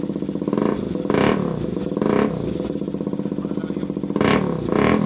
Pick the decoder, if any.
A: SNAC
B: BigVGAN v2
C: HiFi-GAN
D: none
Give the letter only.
D